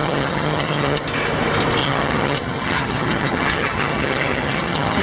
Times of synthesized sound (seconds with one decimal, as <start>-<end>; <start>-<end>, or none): 0.0-1.0; 1.8-5.0